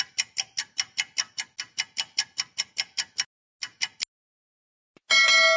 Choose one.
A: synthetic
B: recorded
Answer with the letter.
B